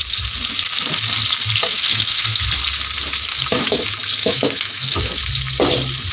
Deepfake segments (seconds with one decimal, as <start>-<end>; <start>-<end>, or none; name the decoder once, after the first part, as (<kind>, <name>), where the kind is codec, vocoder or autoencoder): 1.6-2.4 (autoencoder, DAC-VAE); 3.3-3.8; 4.2-5.2